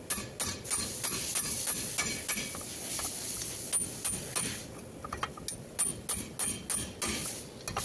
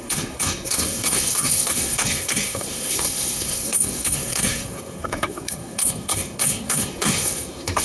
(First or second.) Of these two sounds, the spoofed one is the second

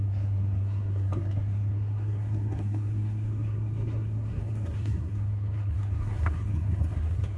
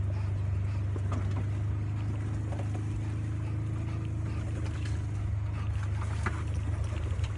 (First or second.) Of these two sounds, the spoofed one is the first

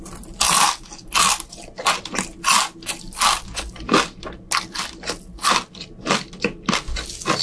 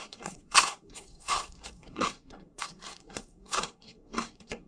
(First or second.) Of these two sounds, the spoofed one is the second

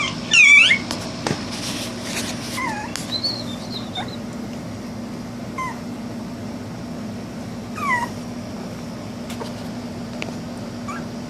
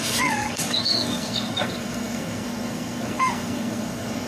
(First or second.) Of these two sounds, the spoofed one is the second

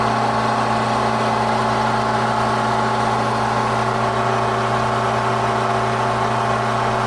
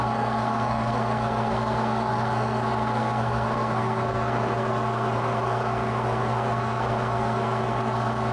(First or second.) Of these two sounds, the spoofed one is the second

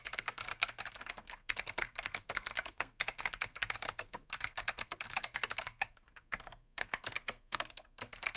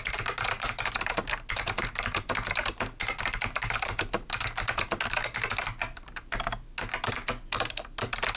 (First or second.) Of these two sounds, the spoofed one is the first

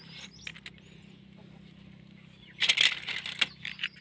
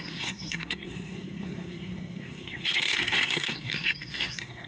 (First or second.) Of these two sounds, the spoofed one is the second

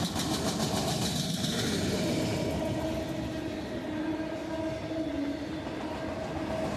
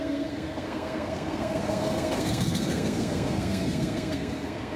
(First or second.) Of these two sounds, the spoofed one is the second